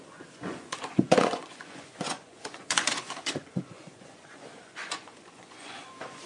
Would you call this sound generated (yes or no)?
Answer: yes